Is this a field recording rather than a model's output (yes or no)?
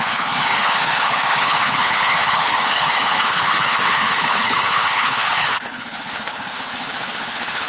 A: no